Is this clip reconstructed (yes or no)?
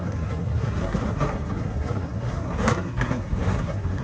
yes